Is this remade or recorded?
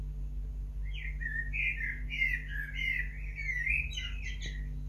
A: recorded